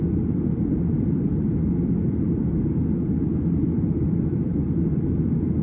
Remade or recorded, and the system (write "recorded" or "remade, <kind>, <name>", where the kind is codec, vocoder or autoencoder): recorded